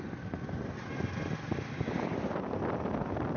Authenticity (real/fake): real